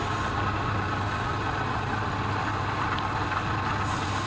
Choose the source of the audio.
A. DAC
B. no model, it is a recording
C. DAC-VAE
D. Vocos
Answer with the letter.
B